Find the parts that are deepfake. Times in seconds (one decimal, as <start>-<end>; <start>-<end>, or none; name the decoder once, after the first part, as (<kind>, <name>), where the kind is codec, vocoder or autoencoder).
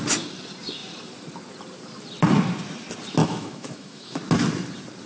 3.2-4.2 (autoencoder, DAC-VAE)